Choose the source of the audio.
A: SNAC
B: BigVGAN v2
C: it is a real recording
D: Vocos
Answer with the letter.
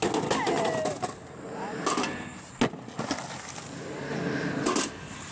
C